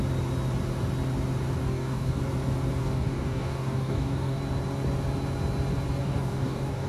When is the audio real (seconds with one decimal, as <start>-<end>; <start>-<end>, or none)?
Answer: 0.0-1.6; 2.2-2.8; 4.4-6.0